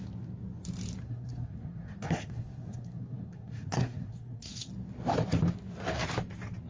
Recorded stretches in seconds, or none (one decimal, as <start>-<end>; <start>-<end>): 0.0-1.0; 4.7-6.7